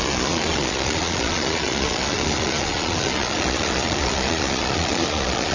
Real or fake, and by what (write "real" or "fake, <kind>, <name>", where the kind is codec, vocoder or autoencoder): fake, vocoder, Vocos